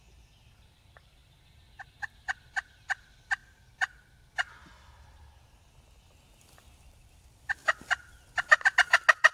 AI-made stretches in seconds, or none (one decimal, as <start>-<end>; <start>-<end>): none

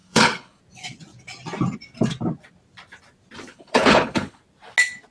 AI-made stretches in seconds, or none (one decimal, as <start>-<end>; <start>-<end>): 0.0-0.6; 3.5-4.4

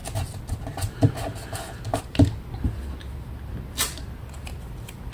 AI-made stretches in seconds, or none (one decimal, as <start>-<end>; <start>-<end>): none

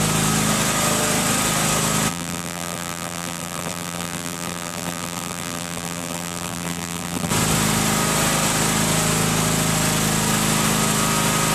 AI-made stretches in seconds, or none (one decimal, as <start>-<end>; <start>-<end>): 2.1-7.3

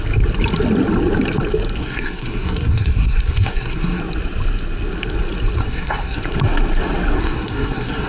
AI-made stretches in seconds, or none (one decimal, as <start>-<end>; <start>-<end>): 1.8-4.0; 5.6-6.2; 7.2-8.1